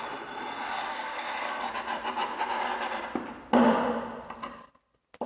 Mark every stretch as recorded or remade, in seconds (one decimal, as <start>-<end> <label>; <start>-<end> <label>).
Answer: 0.0-0.9 recorded; 0.9-1.6 remade; 1.6-5.3 recorded